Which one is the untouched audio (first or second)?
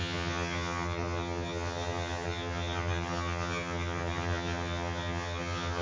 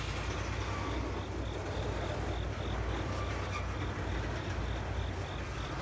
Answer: second